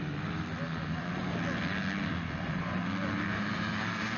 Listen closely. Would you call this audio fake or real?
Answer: real